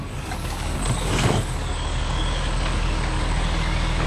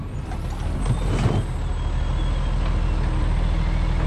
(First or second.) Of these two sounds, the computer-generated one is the first